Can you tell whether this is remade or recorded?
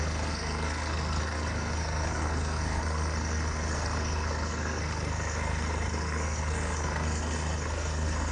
remade